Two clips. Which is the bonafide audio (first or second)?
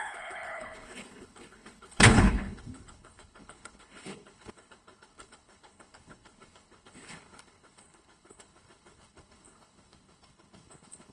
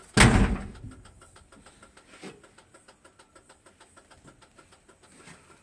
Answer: second